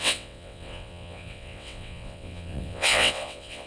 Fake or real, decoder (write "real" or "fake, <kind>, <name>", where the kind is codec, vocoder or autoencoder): fake, vocoder, WaveNeXt